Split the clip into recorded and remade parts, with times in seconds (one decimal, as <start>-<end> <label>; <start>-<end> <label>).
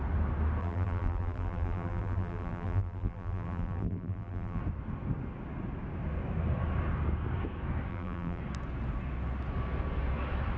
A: 0.0-0.6 recorded; 0.6-4.6 remade; 4.6-7.9 recorded; 7.9-8.4 remade; 8.4-10.6 recorded